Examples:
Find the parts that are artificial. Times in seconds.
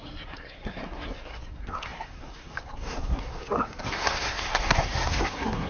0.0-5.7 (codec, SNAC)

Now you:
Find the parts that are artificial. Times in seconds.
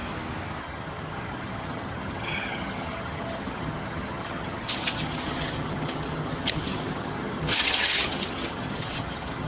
0.6-9.5 (vocoder, HiFi-GAN)